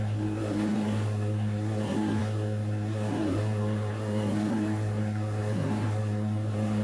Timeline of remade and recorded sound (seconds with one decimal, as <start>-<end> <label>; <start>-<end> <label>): 0.0-6.8 remade